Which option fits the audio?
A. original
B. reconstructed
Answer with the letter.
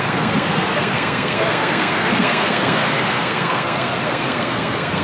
B